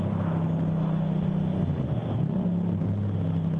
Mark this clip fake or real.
real